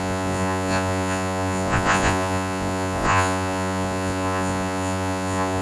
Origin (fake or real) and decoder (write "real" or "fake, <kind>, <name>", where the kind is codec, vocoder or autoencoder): fake, vocoder, Vocos